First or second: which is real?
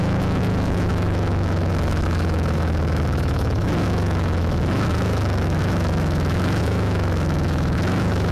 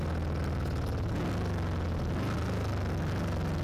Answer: second